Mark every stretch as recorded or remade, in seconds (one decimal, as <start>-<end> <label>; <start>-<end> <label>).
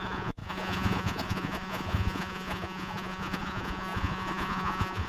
0.0-5.1 remade